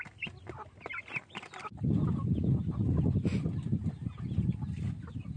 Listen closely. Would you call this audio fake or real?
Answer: real